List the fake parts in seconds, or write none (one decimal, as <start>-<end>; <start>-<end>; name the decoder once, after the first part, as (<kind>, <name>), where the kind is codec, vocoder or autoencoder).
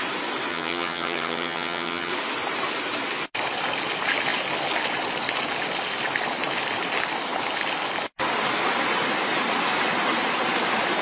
0.5-2.1 (vocoder, HiFi-GAN)